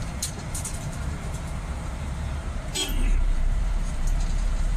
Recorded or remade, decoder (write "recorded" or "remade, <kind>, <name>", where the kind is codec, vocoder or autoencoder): remade, vocoder, BigVGAN v2